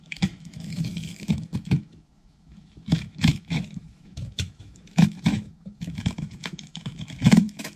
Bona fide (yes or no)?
no